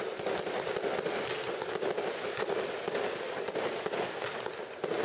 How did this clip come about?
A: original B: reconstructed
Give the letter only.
A